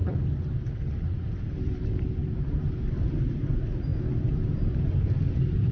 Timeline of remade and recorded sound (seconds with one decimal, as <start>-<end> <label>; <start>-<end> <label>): 0.0-1.1 recorded; 1.1-1.8 remade; 1.8-5.7 recorded